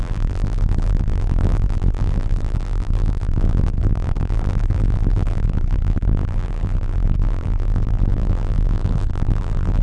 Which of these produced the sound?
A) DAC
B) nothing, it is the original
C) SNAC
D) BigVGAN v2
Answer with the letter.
D